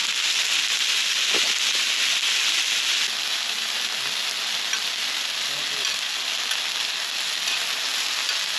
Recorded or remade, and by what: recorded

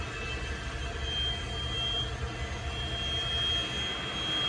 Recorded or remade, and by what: recorded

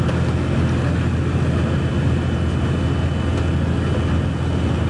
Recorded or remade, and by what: recorded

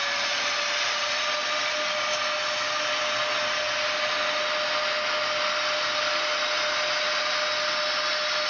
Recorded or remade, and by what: recorded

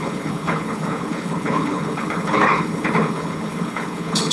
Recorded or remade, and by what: remade, codec, HILCodec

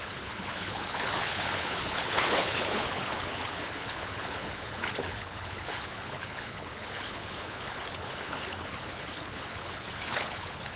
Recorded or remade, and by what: remade, codec, HILCodec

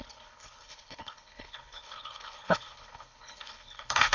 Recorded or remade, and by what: remade, codec, HILCodec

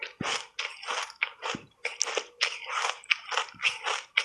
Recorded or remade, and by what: recorded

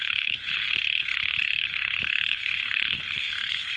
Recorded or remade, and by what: remade, codec, HILCodec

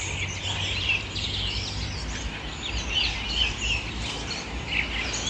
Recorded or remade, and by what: recorded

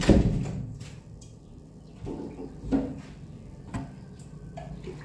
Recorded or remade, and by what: recorded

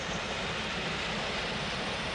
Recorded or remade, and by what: recorded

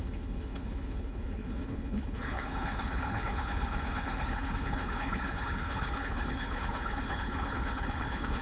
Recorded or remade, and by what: remade, codec, HILCodec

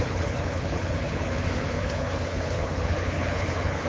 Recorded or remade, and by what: remade, codec, HILCodec